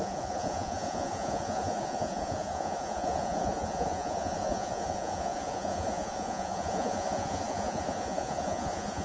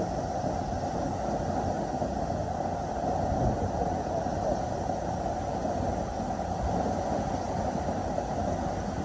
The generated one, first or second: first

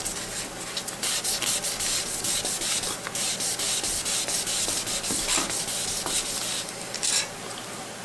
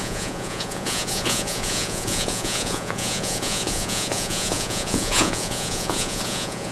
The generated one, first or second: second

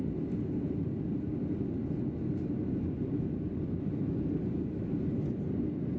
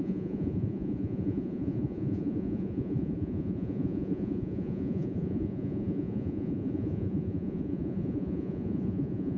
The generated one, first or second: second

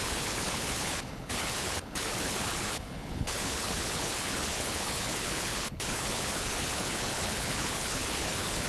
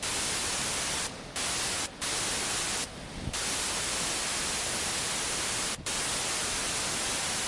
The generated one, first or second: first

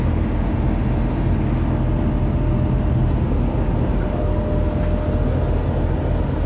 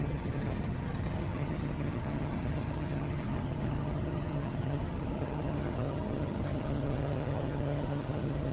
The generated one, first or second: second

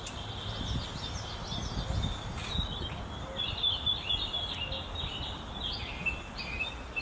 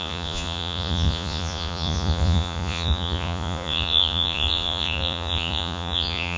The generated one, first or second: second